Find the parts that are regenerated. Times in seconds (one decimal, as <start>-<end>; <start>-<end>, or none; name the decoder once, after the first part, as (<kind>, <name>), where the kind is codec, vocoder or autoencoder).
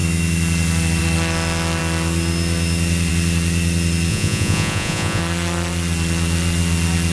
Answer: 4.1-5.2 (vocoder, Vocos)